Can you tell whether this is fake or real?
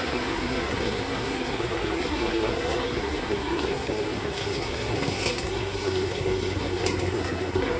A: fake